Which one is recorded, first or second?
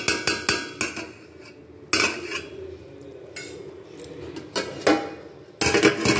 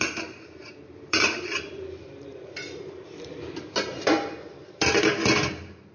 first